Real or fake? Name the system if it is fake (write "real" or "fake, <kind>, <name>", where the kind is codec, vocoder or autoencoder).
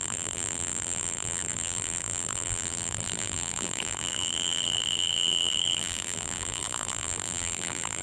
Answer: fake, vocoder, BigVGAN v2